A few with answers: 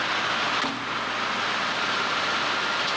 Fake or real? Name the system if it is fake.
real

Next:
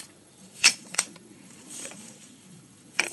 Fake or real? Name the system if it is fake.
fake, vocoder, Vocos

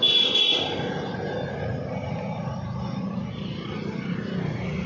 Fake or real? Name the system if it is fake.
real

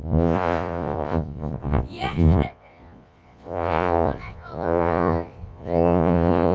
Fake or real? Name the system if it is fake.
fake, vocoder, Vocos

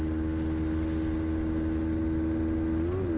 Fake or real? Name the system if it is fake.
real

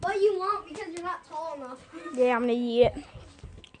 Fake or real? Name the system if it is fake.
real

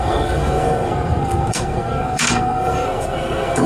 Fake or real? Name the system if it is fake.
fake, codec, SNAC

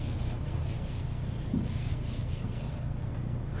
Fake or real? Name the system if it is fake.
fake, codec, SNAC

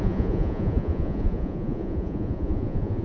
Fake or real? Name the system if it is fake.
fake, vocoder, Vocos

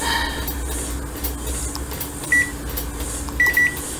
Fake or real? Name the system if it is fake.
real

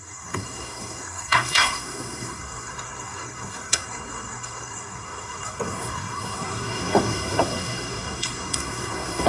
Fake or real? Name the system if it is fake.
fake, codec, SNAC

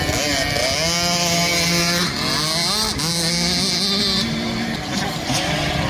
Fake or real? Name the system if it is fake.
real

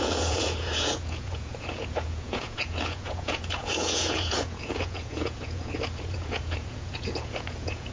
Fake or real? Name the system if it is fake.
fake, vocoder, Vocos